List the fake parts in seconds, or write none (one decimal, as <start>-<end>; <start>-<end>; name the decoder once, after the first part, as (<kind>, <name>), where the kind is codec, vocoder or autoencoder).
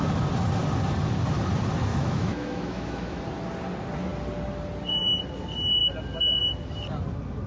1.9-3.2 (autoencoder, DAC-VAE)